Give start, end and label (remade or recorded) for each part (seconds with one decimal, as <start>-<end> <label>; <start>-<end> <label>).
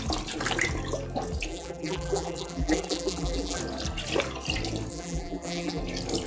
0.0-1.5 recorded; 1.5-3.6 remade; 3.6-4.9 recorded; 4.9-5.8 remade; 5.8-6.3 recorded